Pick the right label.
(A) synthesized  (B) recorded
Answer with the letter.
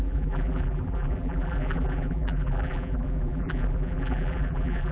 A